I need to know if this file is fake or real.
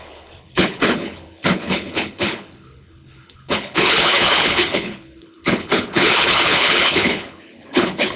fake